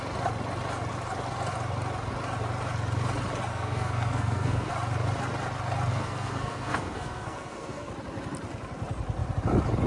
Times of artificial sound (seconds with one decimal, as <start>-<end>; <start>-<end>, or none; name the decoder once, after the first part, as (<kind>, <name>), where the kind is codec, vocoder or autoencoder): 3.5-4.7 (codec, SNAC); 5.9-7.9